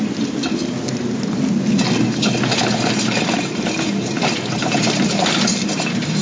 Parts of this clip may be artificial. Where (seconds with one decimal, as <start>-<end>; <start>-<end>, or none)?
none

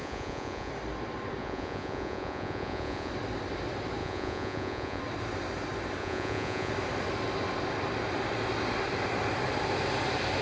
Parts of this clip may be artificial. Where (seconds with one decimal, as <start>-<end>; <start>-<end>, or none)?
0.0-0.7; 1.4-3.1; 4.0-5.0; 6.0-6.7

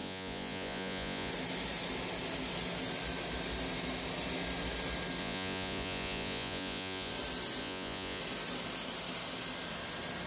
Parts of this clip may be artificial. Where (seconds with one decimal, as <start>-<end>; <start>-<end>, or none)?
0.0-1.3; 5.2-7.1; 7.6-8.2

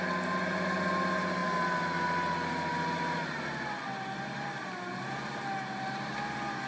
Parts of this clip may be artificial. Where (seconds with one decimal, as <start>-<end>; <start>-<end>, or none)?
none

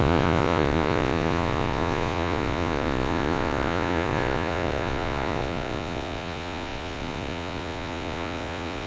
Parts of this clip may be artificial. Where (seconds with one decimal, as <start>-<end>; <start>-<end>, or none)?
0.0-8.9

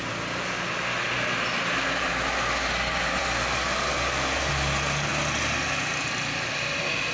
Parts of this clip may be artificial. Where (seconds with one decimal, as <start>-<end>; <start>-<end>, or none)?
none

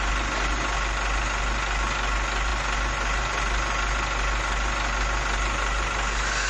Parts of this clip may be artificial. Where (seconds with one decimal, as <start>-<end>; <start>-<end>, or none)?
none

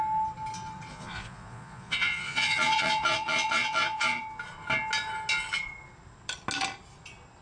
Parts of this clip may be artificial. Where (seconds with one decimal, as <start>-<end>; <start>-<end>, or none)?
0.9-4.2